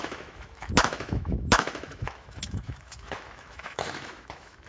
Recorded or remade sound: remade